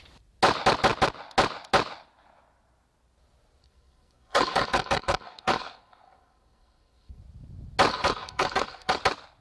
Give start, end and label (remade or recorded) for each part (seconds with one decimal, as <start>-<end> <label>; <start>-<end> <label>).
0.0-3.6 recorded; 3.6-7.2 remade; 7.2-7.9 recorded; 7.9-9.0 remade; 9.0-9.4 recorded